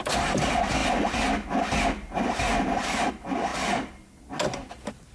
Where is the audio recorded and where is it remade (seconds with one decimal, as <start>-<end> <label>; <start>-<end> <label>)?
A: 0.0-5.1 recorded